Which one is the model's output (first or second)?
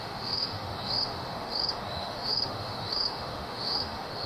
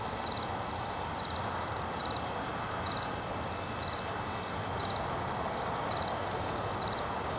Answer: first